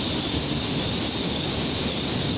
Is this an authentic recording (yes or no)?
yes